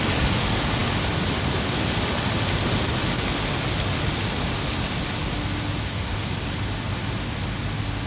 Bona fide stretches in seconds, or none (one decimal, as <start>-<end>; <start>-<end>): 0.0-8.1